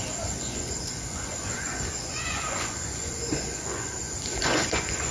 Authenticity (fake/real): fake